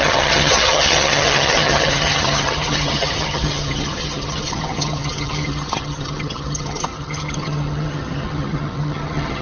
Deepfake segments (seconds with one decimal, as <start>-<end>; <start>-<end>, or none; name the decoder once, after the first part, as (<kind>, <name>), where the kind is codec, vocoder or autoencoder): 0.0-9.4 (vocoder, HiFi-GAN)

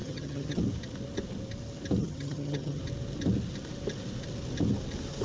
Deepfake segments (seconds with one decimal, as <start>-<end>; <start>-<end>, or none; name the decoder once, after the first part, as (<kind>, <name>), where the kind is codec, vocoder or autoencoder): 0.0-0.6 (vocoder, HiFi-GAN); 2.0-2.8

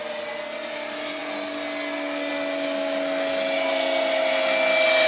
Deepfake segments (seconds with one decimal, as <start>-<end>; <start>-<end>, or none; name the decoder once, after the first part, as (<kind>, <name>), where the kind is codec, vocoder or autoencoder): none

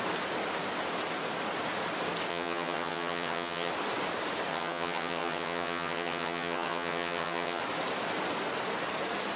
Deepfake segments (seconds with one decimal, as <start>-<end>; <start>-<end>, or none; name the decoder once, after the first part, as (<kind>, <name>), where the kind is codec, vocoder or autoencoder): 2.3-3.7 (vocoder, HiFi-GAN); 4.5-7.6

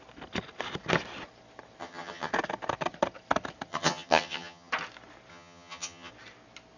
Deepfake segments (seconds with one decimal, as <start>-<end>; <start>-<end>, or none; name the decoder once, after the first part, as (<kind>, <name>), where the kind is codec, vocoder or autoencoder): 1.8-2.3 (vocoder, HiFi-GAN); 3.7-4.7; 5.3-6.1

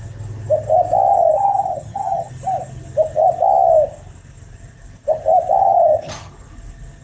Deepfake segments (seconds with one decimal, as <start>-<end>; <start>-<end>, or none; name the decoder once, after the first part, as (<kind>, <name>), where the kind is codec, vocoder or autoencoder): 1.1-2.3 (vocoder, HiFi-GAN); 5.6-6.3